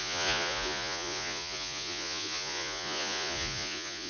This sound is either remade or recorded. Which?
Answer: remade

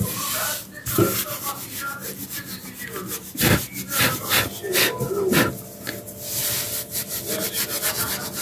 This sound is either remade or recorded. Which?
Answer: recorded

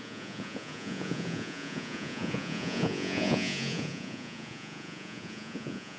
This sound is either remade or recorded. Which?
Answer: remade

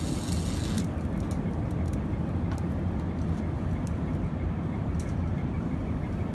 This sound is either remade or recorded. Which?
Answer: recorded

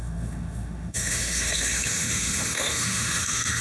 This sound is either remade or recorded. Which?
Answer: remade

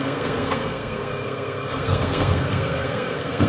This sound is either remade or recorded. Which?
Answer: remade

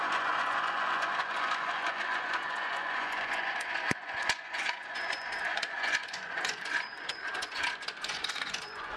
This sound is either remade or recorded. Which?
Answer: remade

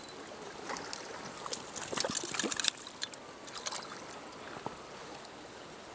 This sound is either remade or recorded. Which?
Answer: recorded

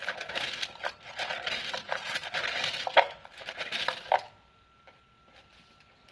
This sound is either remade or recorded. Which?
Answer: recorded